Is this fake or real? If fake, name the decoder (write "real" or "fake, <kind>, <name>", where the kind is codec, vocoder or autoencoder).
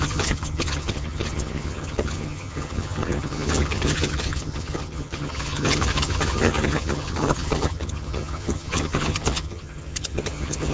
fake, vocoder, HiFi-GAN